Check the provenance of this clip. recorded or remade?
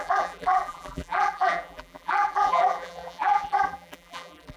remade